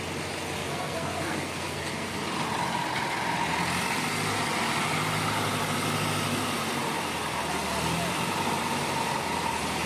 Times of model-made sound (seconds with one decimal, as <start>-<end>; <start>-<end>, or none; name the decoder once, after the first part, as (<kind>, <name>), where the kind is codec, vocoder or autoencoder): 0.6-2.2 (codec, SNAC)